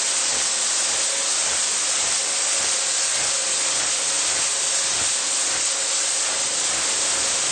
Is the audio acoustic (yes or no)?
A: yes